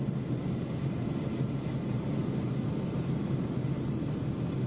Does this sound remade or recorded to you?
recorded